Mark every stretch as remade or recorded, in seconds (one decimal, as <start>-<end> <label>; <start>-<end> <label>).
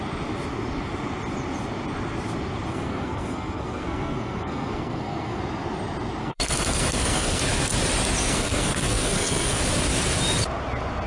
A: 0.0-2.7 recorded; 2.7-5.4 remade; 5.4-6.2 recorded; 6.2-7.4 remade; 7.4-8.2 recorded; 8.2-9.6 remade; 9.6-11.1 recorded